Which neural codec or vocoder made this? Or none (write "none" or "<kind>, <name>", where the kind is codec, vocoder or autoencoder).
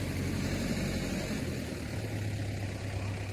none